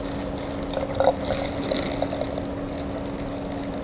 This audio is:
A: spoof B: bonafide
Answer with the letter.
B